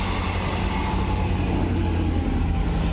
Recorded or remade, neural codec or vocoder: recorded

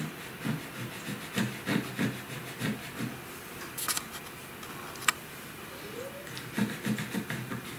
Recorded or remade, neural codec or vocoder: recorded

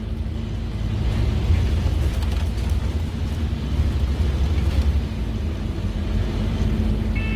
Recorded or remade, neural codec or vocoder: recorded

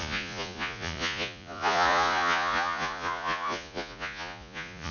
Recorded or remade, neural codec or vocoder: remade, vocoder, Vocos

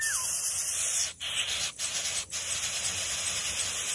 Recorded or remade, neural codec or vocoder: recorded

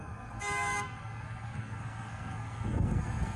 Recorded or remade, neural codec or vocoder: remade, codec, SNAC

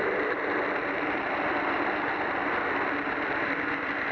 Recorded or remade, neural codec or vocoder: recorded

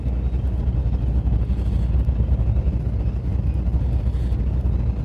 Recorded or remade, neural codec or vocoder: recorded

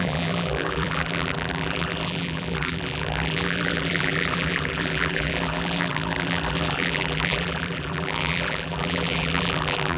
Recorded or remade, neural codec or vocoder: remade, vocoder, BigVGAN v2